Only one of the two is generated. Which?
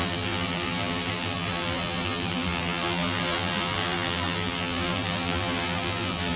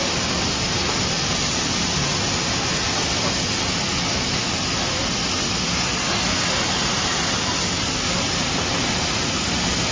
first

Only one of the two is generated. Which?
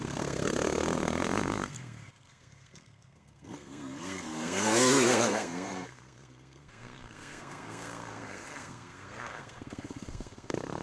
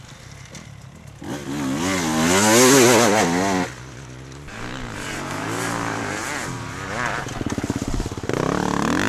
first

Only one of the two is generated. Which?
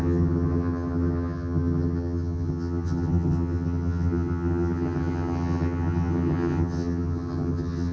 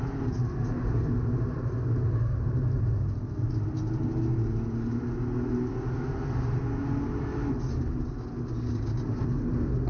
first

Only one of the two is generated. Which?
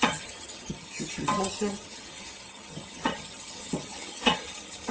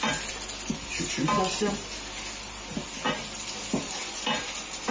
first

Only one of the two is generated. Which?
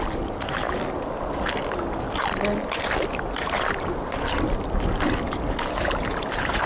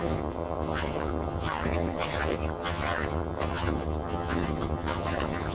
second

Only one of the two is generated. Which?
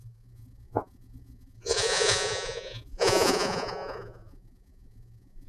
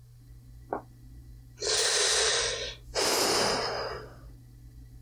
first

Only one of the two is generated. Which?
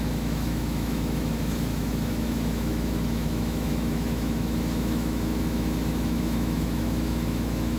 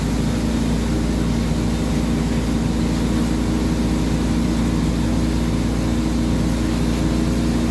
first